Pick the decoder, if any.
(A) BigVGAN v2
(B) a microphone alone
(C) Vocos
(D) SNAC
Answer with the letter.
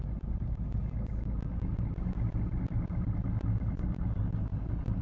B